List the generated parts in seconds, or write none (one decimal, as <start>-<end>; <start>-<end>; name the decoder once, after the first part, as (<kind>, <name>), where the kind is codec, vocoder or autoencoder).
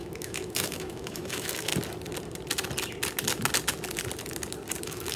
0.0-1.7 (autoencoder, DAC-VAE); 4.8-5.2